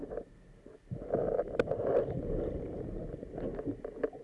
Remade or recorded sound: recorded